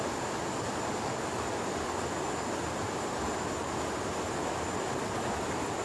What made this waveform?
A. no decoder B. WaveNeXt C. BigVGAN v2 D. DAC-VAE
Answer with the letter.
A